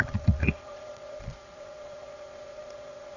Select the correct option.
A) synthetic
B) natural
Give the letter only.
A